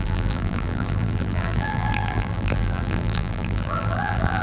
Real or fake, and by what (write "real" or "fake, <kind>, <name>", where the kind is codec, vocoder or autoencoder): fake, vocoder, BigVGAN v2